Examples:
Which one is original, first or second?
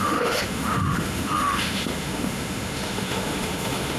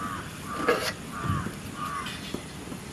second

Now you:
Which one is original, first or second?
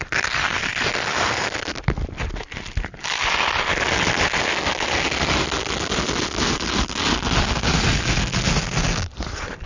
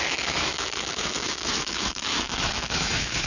first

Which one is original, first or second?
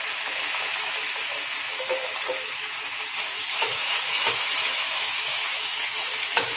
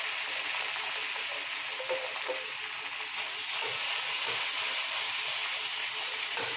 second